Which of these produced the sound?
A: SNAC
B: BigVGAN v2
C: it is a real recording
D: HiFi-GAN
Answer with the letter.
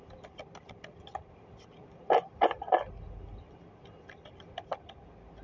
C